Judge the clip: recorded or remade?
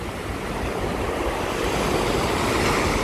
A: recorded